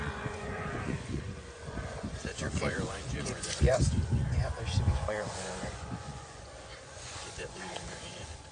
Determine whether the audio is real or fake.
fake